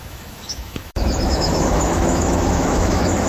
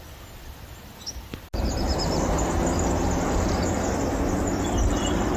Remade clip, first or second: first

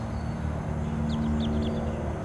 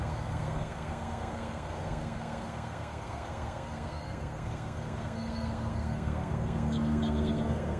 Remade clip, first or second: second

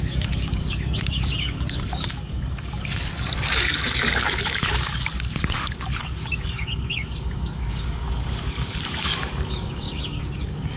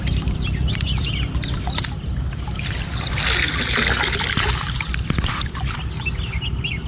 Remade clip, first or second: first